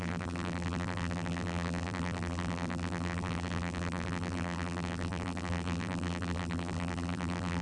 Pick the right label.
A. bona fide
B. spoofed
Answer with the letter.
B